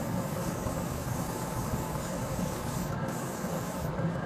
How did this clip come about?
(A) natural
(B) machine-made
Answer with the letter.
B